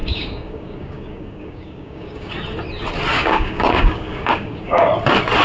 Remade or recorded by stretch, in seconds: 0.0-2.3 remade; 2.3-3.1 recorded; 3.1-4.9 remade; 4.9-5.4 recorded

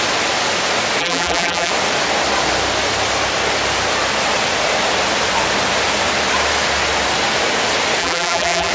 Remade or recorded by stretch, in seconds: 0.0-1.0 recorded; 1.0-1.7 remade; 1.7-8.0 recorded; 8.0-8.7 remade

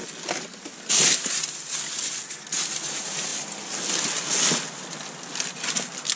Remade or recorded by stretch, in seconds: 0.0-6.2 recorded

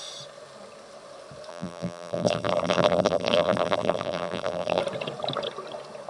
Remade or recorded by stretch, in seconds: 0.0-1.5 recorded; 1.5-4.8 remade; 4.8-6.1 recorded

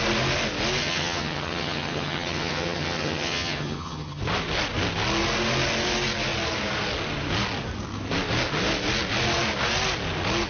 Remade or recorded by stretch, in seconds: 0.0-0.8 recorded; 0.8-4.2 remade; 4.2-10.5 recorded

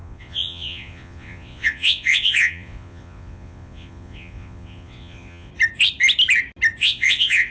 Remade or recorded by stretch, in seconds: 0.0-5.5 remade; 5.5-6.8 recorded; 6.8-7.5 remade

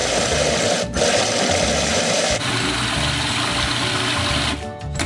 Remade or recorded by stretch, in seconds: 0.0-0.5 remade; 0.5-1.9 recorded; 1.9-2.5 remade; 2.5-5.1 recorded